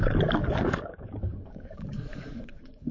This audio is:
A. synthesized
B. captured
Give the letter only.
A